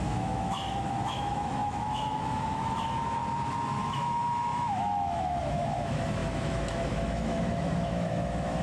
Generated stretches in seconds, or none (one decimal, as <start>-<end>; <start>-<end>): 0.0-3.2; 3.8-8.6